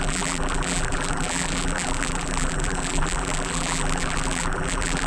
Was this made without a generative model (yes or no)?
no